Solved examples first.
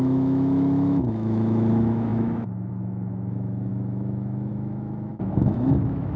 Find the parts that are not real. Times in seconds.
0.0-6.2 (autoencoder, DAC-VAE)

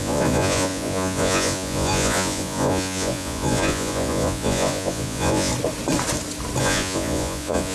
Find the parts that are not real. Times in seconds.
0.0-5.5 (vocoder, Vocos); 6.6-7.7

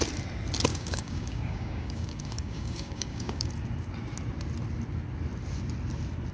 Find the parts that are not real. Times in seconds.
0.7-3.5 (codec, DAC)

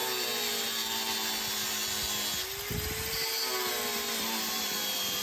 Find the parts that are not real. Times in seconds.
3.9-5.2 (vocoder, BigVGAN v2)

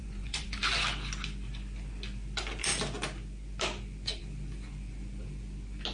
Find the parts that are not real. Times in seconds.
0.0-0.6 (vocoder, Vocos)

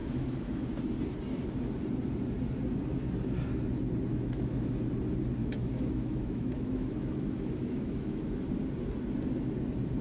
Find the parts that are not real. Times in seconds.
0.0-0.7 (autoencoder, DAC-VAE); 4.1-4.7; 5.4-8.3